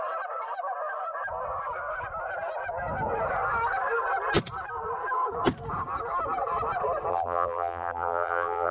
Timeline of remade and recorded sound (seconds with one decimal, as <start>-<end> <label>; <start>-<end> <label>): 0.0-7.1 recorded; 7.1-8.7 remade